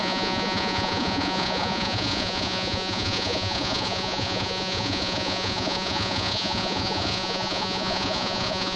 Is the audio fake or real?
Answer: fake